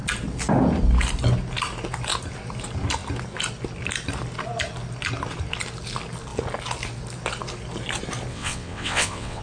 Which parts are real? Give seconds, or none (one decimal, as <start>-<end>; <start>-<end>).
0.0-8.3